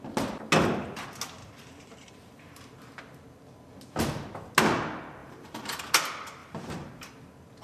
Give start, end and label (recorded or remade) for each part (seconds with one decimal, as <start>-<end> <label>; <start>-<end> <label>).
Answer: 0.0-1.4 recorded; 1.4-3.0 remade; 3.0-5.2 recorded; 5.2-5.8 remade; 5.8-6.4 recorded; 6.4-7.1 remade; 7.1-7.6 recorded